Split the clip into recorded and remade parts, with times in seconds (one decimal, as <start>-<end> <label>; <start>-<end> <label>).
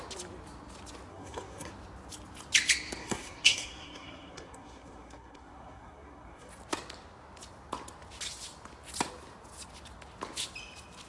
0.0-1.1 recorded; 1.1-1.7 remade; 1.7-3.0 recorded; 3.0-6.5 remade; 6.5-11.1 recorded